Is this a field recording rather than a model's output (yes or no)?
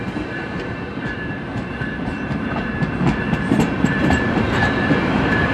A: no